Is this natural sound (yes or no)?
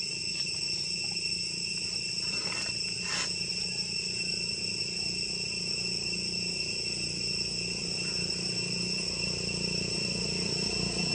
yes